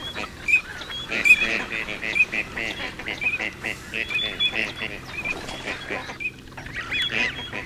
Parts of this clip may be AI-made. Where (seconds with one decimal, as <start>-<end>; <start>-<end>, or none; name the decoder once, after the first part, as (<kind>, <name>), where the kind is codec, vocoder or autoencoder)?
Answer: none